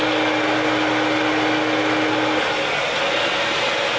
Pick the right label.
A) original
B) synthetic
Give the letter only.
A